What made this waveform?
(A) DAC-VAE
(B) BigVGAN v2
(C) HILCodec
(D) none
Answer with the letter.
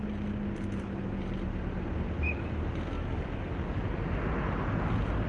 D